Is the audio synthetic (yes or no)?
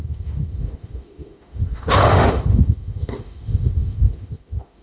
yes